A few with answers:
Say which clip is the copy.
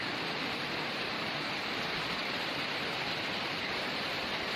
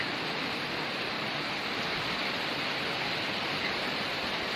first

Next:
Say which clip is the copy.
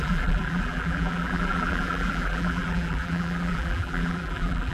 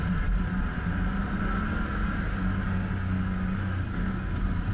first